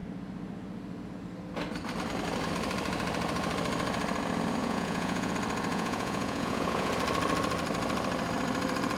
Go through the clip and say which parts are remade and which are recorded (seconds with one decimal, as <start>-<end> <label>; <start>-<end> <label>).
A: 0.0-4.6 recorded; 4.6-5.3 remade; 5.3-5.7 recorded; 5.7-6.9 remade; 6.9-9.0 recorded

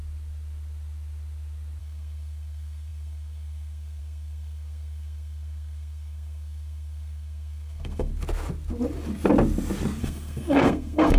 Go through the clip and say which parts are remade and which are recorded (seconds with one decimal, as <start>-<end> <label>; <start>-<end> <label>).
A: 0.0-1.8 recorded; 1.8-8.1 remade; 8.1-10.0 recorded; 10.0-11.2 remade

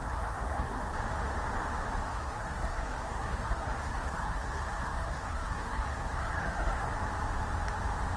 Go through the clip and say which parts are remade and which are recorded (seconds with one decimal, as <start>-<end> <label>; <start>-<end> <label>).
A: 0.0-0.8 remade; 0.8-2.1 recorded; 2.1-6.9 remade; 6.9-8.2 recorded

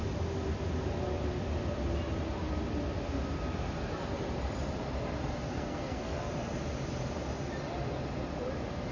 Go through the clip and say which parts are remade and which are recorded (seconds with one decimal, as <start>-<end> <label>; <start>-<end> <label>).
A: 0.0-5.5 recorded; 5.5-6.3 remade; 6.3-8.9 recorded

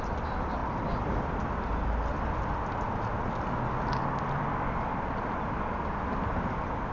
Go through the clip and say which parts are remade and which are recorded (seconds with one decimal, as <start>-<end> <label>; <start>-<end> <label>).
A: 0.0-6.9 recorded